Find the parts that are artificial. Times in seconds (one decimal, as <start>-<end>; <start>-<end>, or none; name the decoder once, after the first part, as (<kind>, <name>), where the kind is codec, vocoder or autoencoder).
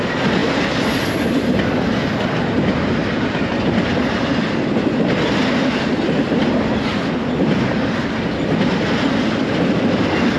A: none